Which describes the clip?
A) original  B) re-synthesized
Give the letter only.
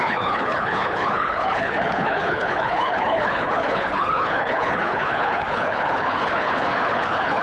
B